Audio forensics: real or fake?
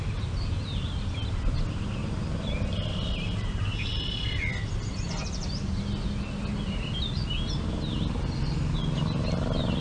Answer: real